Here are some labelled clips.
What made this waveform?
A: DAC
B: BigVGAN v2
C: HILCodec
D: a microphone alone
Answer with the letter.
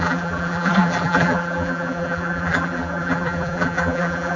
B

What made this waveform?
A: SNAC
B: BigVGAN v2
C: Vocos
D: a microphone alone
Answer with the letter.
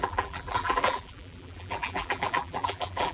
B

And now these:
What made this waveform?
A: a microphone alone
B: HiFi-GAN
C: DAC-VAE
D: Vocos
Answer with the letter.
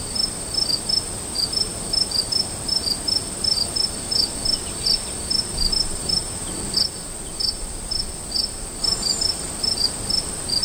A